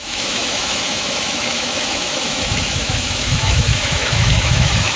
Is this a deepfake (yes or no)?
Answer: yes